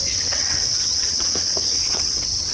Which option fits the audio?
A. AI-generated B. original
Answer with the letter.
A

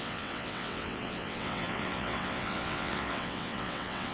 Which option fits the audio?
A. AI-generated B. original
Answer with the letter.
A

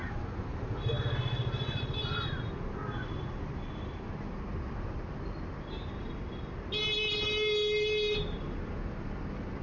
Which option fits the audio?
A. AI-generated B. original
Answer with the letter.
B